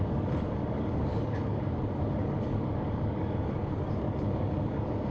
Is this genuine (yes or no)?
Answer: no